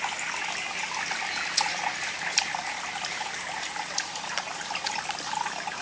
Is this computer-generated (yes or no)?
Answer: no